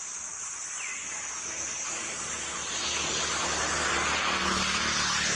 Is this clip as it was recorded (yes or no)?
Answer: yes